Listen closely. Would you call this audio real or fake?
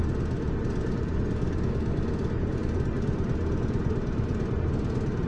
real